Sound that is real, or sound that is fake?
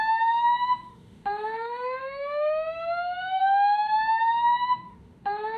fake